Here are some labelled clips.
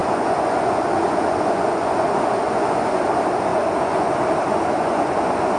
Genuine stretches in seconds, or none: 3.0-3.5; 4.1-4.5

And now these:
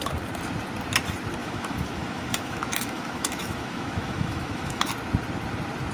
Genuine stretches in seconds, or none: 0.0-1.4; 4.9-5.9